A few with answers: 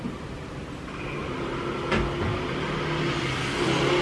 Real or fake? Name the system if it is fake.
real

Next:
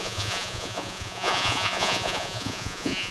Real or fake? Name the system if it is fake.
fake, vocoder, Vocos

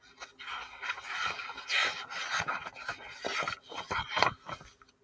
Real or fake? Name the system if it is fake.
real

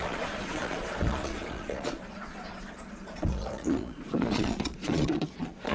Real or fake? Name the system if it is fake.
fake, vocoder, Vocos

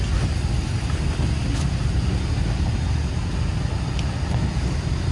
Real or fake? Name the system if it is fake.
real